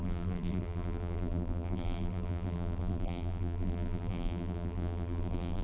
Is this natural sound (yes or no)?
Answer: no